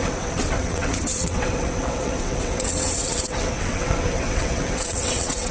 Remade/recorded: remade